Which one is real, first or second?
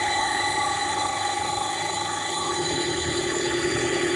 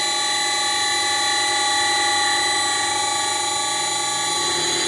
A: second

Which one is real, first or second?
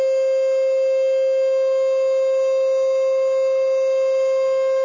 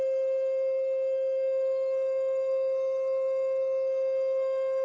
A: first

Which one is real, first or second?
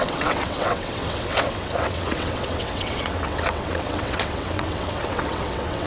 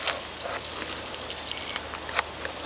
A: second